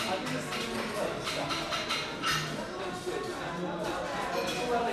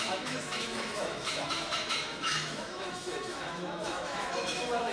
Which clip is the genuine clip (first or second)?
first